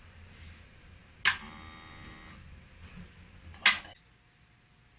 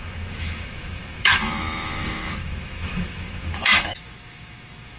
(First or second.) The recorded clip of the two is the first